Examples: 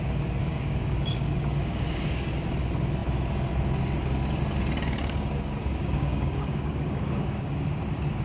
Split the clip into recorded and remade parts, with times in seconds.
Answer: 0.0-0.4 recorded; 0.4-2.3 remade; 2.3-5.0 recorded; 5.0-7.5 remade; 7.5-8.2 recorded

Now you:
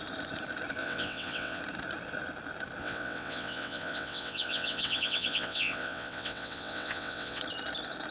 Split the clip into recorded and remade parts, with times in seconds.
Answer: 0.0-0.8 recorded; 0.8-1.6 remade; 1.6-2.8 recorded; 2.8-7.4 remade; 7.4-8.1 recorded